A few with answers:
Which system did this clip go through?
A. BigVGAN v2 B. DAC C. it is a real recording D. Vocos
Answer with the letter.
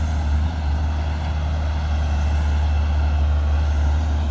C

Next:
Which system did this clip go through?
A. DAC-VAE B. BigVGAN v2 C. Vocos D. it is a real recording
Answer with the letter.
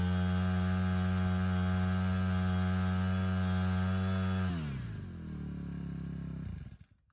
D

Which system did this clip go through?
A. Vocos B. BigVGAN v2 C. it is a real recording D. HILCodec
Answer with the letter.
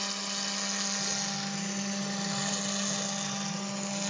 C